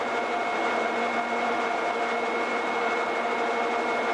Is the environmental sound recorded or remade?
recorded